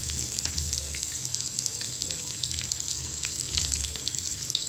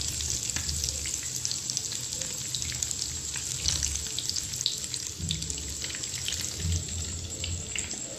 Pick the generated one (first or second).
first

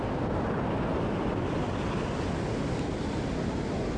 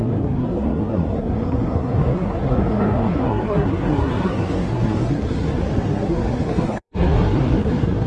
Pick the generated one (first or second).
second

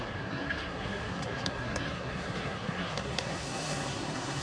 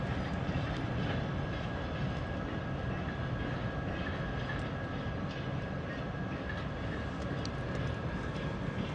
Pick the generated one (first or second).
first